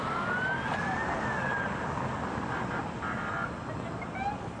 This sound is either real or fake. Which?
real